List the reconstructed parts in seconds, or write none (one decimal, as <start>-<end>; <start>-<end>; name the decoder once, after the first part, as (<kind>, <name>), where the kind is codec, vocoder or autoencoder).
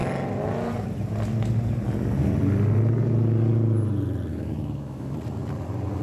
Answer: 4.3-5.1 (autoencoder, DAC-VAE)